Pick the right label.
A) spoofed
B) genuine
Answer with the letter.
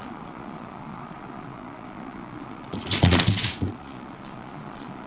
A